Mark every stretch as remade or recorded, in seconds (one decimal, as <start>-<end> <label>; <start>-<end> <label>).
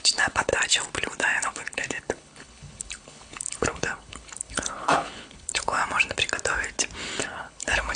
0.0-0.5 remade; 0.5-1.4 recorded; 1.4-5.8 remade; 5.8-7.2 recorded; 7.2-8.0 remade